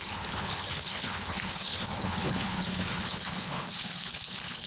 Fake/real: fake